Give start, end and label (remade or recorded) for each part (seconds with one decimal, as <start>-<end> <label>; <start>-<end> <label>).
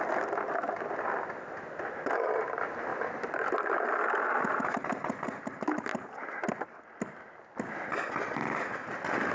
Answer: 0.0-5.9 recorded; 5.9-7.1 remade; 7.1-9.3 recorded